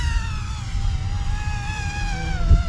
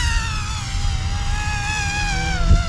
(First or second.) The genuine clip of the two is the second